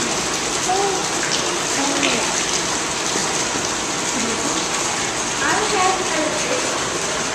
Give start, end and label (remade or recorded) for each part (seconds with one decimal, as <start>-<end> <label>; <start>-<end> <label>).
0.0-7.3 recorded